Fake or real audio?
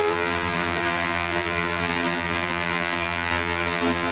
fake